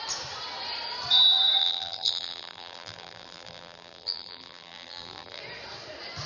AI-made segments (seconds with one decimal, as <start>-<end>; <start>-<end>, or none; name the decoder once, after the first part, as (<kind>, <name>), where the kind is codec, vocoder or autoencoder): 1.6-5.4 (vocoder, BigVGAN v2)

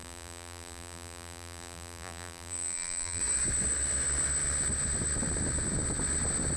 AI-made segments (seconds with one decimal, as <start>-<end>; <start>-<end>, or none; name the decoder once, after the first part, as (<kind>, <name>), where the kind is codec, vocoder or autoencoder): 0.0-3.2 (vocoder, BigVGAN v2)

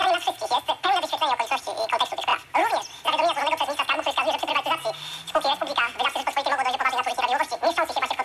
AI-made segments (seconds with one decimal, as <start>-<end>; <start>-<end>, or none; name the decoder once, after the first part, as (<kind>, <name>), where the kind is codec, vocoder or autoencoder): none

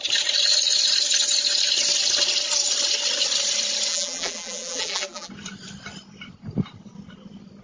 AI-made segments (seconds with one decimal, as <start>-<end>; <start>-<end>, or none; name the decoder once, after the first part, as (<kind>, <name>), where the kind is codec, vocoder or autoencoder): 3.9-5.3 (vocoder, BigVGAN v2)